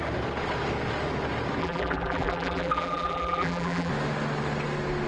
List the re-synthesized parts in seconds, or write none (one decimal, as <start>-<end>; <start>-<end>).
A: 1.6-3.9